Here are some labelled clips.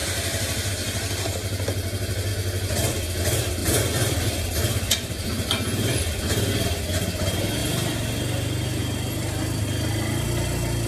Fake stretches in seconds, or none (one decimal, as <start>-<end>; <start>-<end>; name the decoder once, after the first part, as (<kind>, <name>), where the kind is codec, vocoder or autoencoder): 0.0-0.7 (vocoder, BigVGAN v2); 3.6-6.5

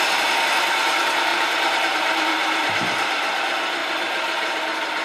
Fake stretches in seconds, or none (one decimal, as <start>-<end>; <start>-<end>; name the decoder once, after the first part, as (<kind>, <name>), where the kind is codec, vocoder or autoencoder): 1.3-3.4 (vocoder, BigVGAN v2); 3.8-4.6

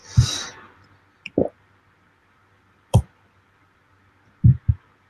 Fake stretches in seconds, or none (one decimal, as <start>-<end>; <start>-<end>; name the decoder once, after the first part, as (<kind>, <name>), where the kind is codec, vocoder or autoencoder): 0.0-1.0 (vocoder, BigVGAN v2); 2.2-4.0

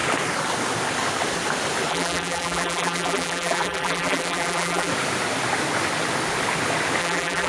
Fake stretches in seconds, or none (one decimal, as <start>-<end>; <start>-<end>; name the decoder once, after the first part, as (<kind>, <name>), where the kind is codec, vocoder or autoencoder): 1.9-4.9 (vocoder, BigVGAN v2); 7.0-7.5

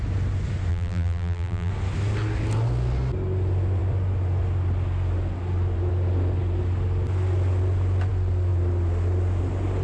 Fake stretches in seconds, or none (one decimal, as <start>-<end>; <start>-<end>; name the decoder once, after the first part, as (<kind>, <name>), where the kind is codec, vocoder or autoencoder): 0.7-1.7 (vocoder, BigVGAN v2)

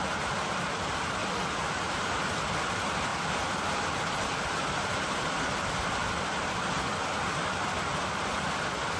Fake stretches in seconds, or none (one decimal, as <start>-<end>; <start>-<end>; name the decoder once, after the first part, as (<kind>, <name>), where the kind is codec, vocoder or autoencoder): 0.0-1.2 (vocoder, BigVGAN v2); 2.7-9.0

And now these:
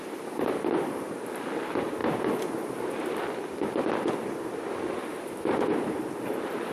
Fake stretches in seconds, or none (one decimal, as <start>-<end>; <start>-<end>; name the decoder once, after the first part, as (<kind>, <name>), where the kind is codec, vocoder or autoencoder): 0.0-2.0 (vocoder, BigVGAN v2); 3.0-6.7

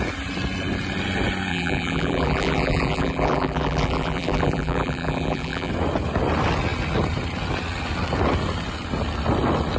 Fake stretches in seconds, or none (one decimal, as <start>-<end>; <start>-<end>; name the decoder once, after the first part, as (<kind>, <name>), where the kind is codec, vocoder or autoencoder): 1.5-5.7 (vocoder, BigVGAN v2)